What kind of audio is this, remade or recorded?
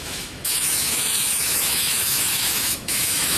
remade